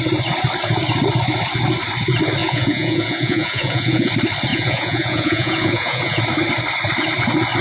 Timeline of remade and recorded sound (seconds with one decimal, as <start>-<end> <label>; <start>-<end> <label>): 0.0-2.4 recorded; 2.4-4.1 remade; 4.1-4.5 recorded; 4.5-6.2 remade; 6.2-7.6 recorded